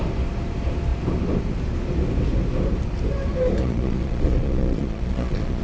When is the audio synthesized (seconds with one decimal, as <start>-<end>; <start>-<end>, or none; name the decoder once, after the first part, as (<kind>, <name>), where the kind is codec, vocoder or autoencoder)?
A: 3.6-5.6 (vocoder, Vocos)